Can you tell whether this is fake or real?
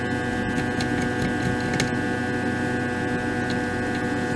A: real